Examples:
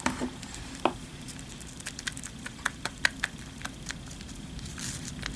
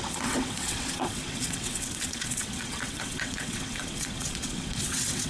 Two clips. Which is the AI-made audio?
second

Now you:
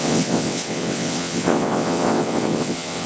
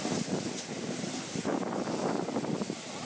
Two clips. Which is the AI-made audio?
first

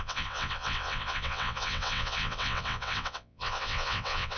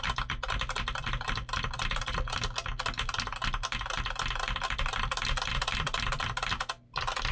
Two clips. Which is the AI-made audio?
first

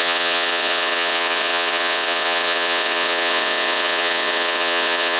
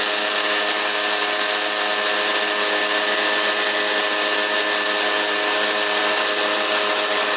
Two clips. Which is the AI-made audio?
first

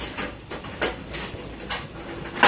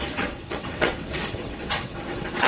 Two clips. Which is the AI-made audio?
second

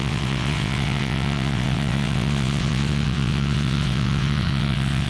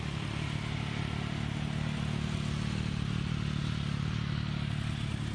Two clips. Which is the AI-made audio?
first